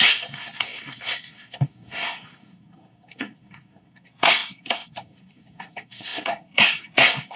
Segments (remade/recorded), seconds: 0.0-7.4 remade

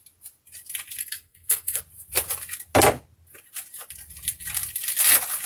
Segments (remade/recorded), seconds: 0.0-1.0 recorded; 1.0-1.8 remade; 1.8-5.5 recorded

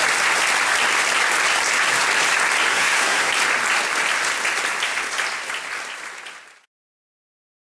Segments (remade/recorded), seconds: 0.0-2.7 recorded; 2.7-3.3 remade; 3.3-7.8 recorded

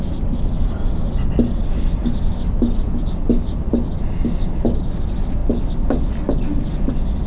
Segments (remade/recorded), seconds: 0.0-7.3 recorded

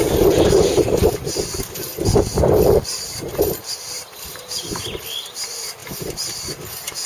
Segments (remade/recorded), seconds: 0.0-7.1 recorded